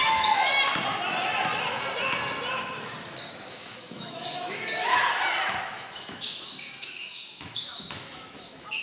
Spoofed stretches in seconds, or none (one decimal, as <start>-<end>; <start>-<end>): 0.0-0.5; 3.3-4.9; 5.6-8.8